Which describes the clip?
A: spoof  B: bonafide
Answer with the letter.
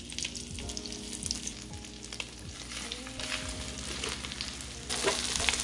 B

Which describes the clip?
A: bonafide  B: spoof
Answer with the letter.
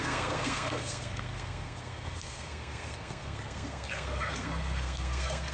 B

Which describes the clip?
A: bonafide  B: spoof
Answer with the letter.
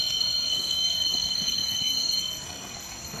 B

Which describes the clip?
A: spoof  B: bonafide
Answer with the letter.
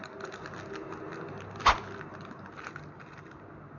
B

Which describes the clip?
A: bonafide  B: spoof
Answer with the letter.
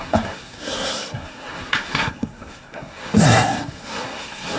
B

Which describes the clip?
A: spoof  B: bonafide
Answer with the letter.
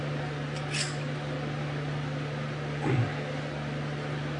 B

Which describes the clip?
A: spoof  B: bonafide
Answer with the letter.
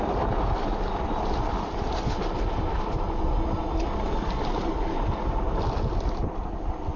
B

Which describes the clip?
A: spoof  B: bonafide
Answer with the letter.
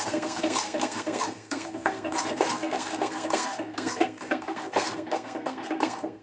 A